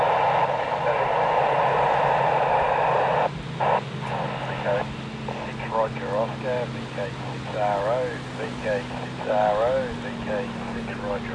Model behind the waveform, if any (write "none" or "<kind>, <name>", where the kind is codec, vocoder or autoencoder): none